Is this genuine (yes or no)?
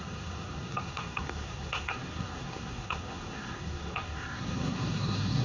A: no